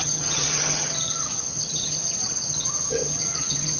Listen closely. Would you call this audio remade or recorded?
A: remade